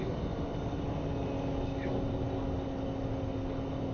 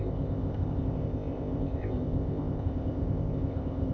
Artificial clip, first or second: second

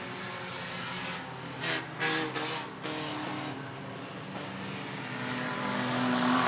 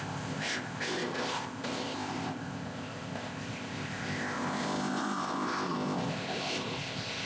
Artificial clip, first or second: second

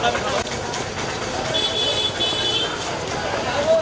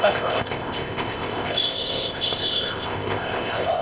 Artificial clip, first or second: second